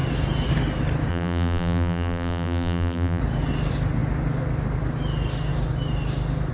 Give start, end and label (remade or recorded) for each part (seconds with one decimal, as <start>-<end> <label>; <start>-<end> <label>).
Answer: 0.0-1.1 recorded; 1.1-3.2 remade; 3.2-6.5 recorded